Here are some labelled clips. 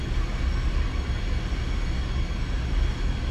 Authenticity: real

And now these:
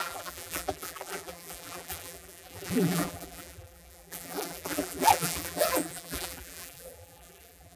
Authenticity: fake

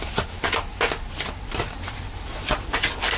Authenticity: real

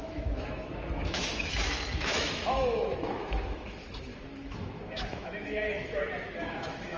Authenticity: fake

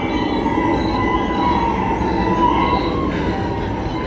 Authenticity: real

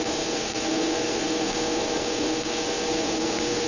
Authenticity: fake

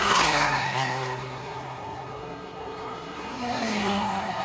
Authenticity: fake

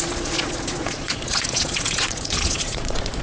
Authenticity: fake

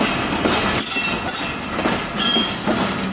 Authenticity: real